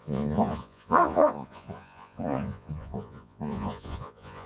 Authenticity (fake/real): fake